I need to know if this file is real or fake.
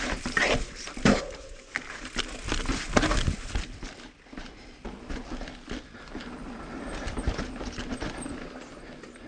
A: real